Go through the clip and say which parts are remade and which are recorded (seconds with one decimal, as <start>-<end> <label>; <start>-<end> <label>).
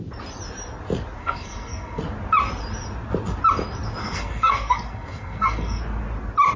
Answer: 0.0-1.2 recorded; 1.2-2.0 remade; 2.0-4.0 recorded; 4.0-5.8 remade; 5.8-6.6 recorded